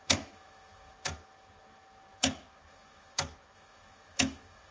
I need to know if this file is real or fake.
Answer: fake